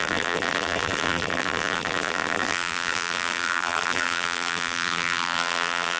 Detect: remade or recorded remade